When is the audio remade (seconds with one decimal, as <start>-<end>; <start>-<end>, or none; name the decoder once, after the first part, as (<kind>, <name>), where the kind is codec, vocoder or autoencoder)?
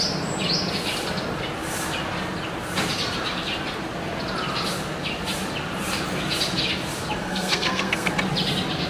7.2-8.1 (codec, SNAC)